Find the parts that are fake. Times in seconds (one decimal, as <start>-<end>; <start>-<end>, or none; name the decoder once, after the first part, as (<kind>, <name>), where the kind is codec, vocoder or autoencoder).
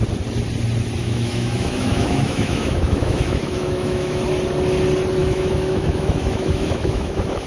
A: 1.0-4.2 (autoencoder, DAC-VAE); 5.2-7.5